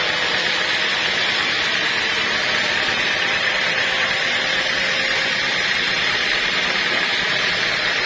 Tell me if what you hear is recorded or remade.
remade